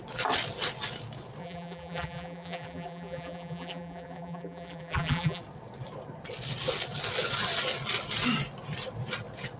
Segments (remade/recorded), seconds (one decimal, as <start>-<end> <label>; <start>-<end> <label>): 0.0-1.4 recorded; 1.4-5.4 remade; 5.4-9.6 recorded